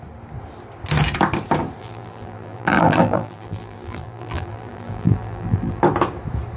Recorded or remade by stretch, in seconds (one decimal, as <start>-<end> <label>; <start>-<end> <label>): 0.0-1.8 recorded; 1.8-5.8 remade; 5.8-6.6 recorded